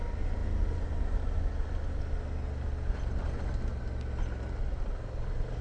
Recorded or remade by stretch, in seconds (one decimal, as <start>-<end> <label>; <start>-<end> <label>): 0.0-5.6 recorded